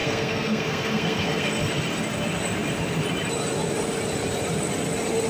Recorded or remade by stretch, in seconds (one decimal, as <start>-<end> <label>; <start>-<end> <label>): 0.0-1.5 remade; 1.5-5.3 recorded